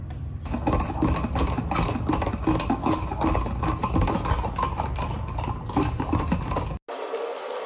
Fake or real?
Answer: real